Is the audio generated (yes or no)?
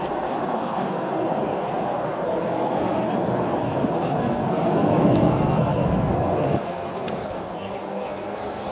yes